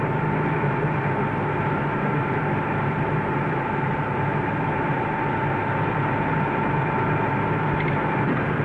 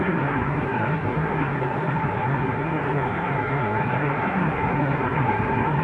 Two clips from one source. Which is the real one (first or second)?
first